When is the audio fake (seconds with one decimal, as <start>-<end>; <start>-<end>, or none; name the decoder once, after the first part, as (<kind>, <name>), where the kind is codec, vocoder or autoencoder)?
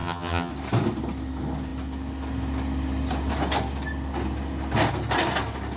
0.0-0.5 (vocoder, HiFi-GAN)